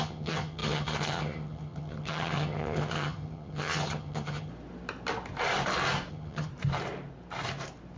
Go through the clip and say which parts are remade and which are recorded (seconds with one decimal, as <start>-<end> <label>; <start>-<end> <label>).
0.0-4.5 remade; 4.5-6.1 recorded; 6.1-6.5 remade; 6.5-8.0 recorded